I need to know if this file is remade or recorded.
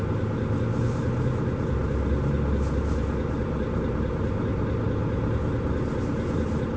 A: recorded